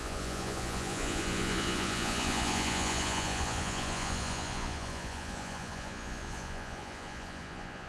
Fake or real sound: fake